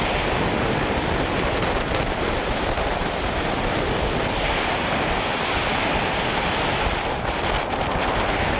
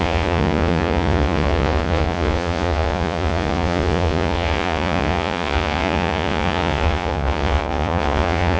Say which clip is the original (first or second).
first